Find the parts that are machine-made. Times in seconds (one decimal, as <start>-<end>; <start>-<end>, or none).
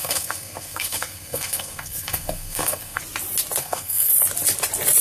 0.0-3.0; 3.6-4.1